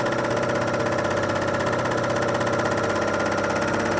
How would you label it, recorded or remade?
recorded